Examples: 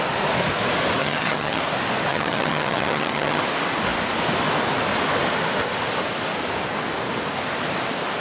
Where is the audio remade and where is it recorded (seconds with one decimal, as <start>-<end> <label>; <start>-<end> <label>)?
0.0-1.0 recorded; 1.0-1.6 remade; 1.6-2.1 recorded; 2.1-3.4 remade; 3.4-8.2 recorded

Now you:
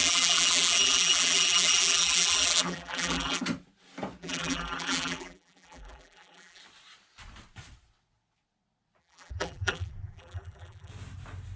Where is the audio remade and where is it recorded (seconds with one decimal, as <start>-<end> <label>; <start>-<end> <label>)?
0.0-3.4 remade; 3.4-4.2 recorded; 4.2-6.6 remade; 6.6-9.0 recorded; 9.0-10.9 remade; 10.9-11.6 recorded

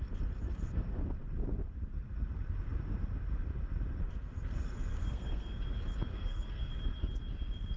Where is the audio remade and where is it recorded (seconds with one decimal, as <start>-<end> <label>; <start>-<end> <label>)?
0.0-5.0 recorded; 5.0-5.5 remade; 5.5-6.1 recorded; 6.1-6.7 remade; 6.7-7.8 recorded

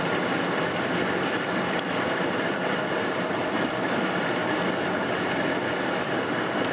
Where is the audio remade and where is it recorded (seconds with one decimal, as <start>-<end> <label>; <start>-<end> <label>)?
0.0-4.4 remade; 4.4-6.0 recorded; 6.0-6.7 remade

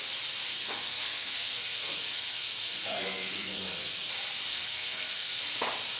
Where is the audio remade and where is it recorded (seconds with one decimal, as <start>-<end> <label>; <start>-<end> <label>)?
0.0-0.5 recorded; 0.5-4.1 remade; 4.1-4.5 recorded; 4.5-5.4 remade; 5.4-6.0 recorded

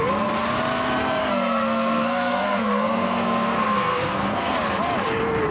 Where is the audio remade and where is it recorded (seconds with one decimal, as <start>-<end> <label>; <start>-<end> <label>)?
0.0-1.2 recorded; 1.2-4.5 remade; 4.5-5.5 recorded